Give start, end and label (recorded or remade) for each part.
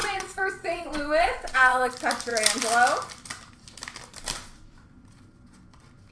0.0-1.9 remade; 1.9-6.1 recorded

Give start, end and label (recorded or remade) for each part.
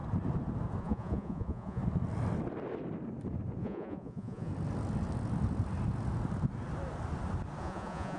0.0-0.8 recorded; 0.8-1.8 remade; 1.8-3.6 recorded; 3.6-4.5 remade; 4.5-7.6 recorded; 7.6-8.2 remade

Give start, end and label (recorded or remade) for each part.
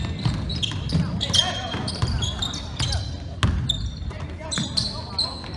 0.0-5.6 recorded